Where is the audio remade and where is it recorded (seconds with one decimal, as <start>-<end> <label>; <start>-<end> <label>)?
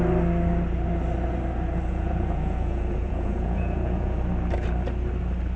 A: 0.0-1.9 recorded; 1.9-4.2 remade; 4.2-5.6 recorded